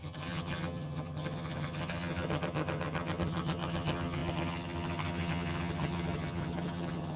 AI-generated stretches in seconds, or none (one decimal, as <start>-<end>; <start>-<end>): 0.0-7.2